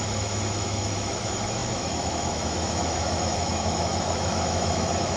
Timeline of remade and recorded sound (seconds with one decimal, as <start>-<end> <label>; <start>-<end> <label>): 0.0-5.2 remade

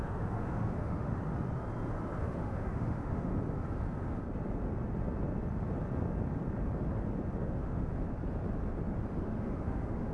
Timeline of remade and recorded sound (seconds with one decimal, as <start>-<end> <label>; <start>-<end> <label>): 0.0-1.2 remade; 1.2-2.2 recorded; 2.2-3.3 remade; 3.3-7.4 recorded; 7.4-7.9 remade; 7.9-9.2 recorded; 9.2-10.1 remade

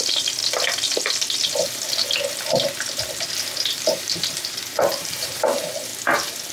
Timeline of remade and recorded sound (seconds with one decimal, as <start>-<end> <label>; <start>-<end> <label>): 0.0-0.4 remade; 0.4-3.7 recorded; 3.7-6.5 remade

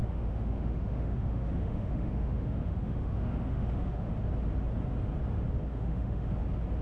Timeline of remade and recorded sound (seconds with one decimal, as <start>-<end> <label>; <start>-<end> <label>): 0.0-4.1 remade; 4.1-5.7 recorded; 5.7-6.3 remade; 6.3-6.8 recorded

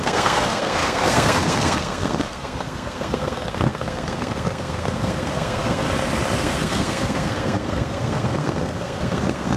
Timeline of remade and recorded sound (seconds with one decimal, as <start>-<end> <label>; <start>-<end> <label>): 0.0-5.8 remade; 5.8-6.4 recorded; 6.4-9.6 remade